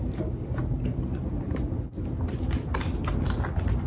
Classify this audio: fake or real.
real